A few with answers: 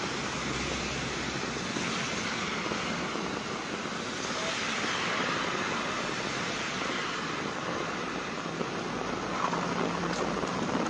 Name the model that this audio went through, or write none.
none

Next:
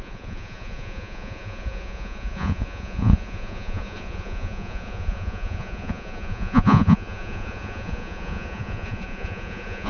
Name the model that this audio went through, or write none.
vocoder, Vocos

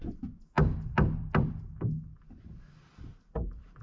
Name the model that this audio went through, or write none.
none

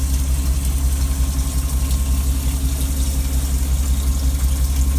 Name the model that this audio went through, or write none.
none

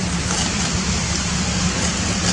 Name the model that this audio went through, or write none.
none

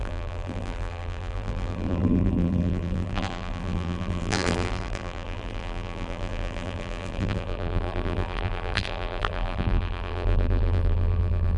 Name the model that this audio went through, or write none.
vocoder, BigVGAN v2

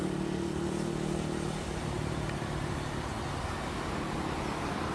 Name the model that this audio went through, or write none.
none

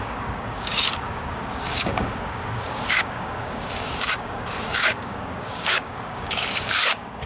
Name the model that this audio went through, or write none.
codec, DAC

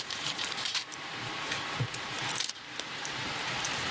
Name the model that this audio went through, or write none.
vocoder, BigVGAN v2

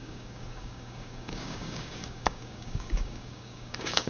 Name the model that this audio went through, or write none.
codec, DAC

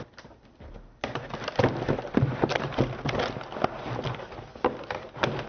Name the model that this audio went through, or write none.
none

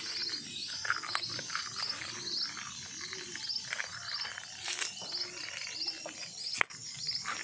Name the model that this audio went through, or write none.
none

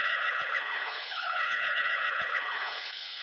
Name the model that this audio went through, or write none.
codec, HILCodec